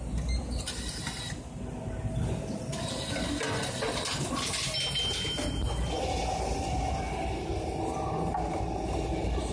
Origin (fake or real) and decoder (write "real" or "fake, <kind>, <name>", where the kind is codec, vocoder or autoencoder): real